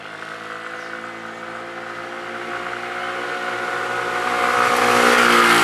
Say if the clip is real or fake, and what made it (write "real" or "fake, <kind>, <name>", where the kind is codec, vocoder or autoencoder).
real